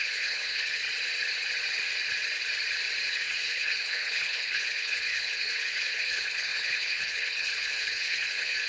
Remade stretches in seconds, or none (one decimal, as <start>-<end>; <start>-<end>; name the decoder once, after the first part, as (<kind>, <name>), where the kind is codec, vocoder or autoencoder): 0.0-0.8 (codec, HILCodec); 3.1-8.7